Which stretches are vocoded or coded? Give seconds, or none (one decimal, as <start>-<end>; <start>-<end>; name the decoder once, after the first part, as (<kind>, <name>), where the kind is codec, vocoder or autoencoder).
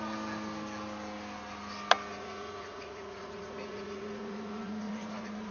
2.1-5.5 (vocoder, Vocos)